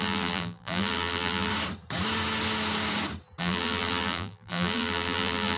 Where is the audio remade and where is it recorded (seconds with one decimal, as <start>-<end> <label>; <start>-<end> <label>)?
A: 0.0-1.5 remade; 1.5-3.4 recorded; 3.4-5.6 remade